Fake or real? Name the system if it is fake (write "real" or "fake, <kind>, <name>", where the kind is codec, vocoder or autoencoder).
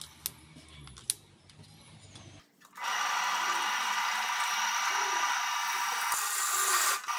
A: real